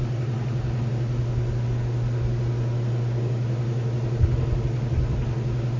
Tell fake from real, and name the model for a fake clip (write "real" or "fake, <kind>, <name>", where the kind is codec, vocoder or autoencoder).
real